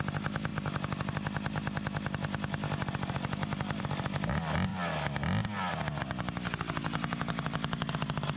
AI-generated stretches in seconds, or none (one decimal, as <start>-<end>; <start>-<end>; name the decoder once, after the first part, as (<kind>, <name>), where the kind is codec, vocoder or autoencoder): none